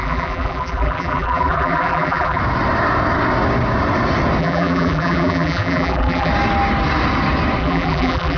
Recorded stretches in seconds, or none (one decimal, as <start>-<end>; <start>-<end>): 2.4-4.4; 6.3-7.6